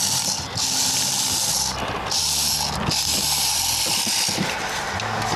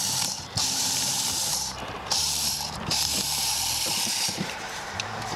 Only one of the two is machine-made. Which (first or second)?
second